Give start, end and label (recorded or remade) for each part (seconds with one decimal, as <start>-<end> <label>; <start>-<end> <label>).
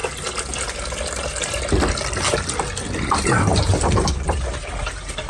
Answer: 0.0-1.3 recorded; 1.3-5.3 remade